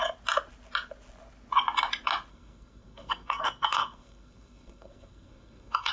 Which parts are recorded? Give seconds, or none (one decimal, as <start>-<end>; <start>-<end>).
0.0-2.3